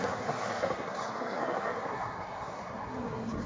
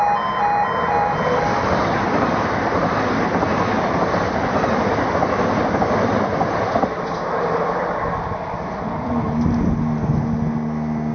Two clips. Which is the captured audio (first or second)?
second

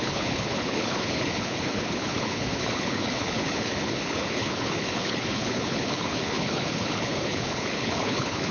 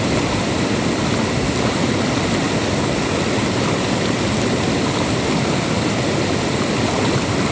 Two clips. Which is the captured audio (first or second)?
second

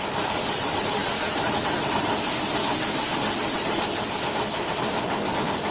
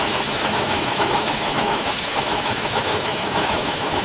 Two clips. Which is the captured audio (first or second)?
first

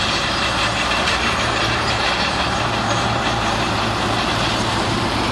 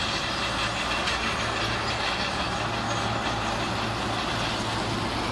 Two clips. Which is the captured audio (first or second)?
second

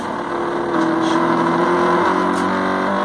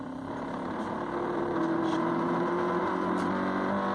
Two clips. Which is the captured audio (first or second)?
first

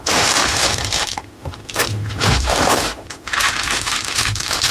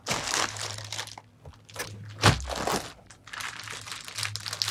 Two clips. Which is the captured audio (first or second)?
second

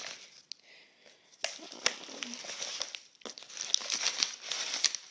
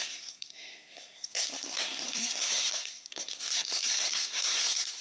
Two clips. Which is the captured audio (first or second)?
first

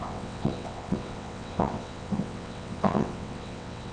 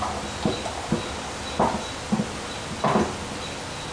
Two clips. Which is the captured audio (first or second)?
second